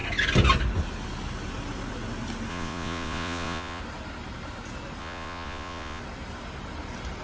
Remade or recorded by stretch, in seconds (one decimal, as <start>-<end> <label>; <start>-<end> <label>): 0.0-2.5 recorded; 2.5-3.8 remade; 3.8-5.0 recorded; 5.0-6.0 remade; 6.0-7.2 recorded